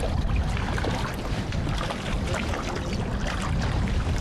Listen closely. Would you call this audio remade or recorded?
recorded